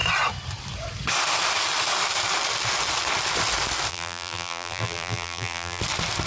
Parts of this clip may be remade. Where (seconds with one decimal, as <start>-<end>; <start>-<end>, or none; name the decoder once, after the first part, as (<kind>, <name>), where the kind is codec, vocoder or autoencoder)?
3.9-5.8 (vocoder, BigVGAN v2)